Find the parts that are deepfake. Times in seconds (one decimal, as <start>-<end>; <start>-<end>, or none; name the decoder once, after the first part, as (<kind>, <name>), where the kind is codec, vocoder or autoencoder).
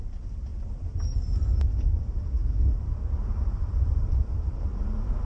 0.0-0.5 (vocoder, BigVGAN v2); 2.0-2.4; 3.2-5.3